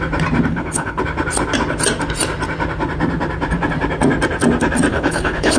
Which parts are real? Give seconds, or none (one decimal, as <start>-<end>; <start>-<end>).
0.0-0.5; 1.0-4.9